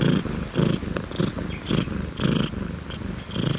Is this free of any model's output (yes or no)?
yes